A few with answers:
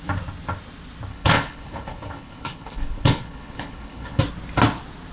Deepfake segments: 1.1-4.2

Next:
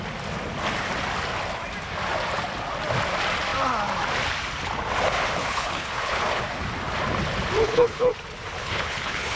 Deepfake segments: 5.4-6.4; 7.6-8.1; 8.6-9.4

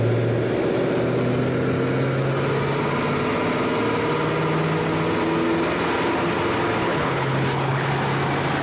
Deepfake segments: 6.8-7.9

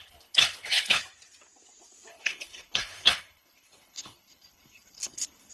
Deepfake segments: 0.0-1.0; 2.1-5.5

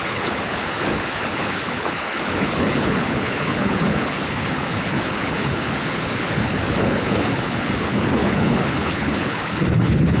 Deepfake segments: 0.0-10.2